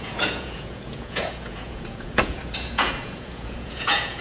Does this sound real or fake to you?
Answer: fake